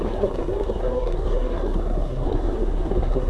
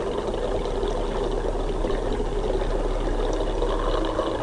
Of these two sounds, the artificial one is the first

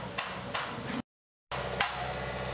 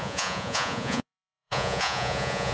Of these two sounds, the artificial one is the second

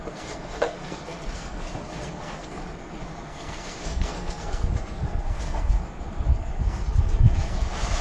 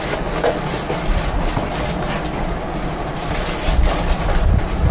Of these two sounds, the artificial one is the first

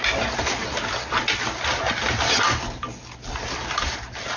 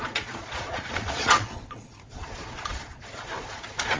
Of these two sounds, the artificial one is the second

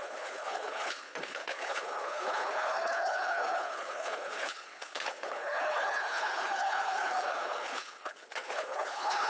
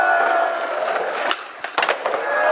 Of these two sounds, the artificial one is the first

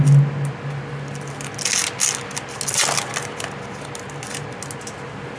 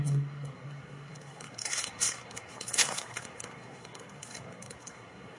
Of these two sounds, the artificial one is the second